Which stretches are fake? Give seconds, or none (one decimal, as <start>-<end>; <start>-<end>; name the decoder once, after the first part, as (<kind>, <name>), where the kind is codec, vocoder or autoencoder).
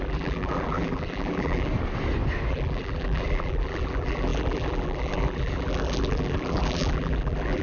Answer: 0.0-1.7 (vocoder, BigVGAN v2); 2.5-7.6